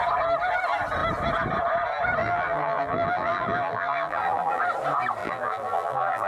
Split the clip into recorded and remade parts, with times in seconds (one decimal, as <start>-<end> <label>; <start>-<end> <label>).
0.0-2.2 recorded; 2.2-4.6 remade; 4.6-5.2 recorded; 5.2-6.3 remade